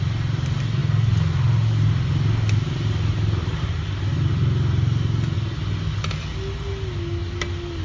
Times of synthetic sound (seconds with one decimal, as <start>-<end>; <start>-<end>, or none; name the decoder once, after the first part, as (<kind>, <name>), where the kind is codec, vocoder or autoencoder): none